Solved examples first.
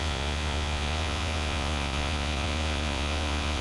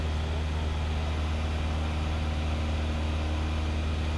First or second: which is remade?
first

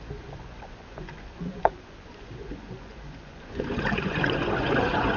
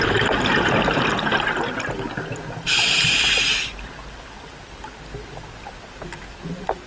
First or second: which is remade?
first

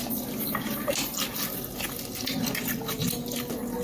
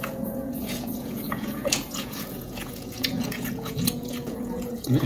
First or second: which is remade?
second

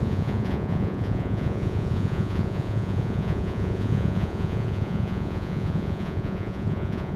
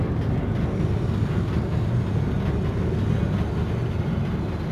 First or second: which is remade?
first